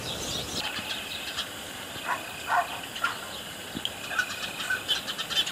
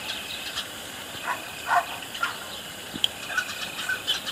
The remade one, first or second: second